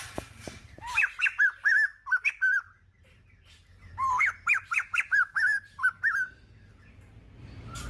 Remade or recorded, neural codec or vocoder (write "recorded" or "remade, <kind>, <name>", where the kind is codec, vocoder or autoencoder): remade, vocoder, BigVGAN v2